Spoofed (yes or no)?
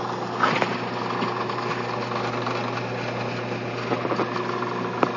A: no